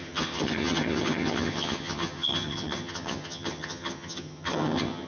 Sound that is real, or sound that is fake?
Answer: fake